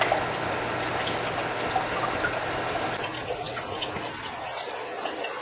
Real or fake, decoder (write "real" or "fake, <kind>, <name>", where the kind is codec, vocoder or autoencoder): real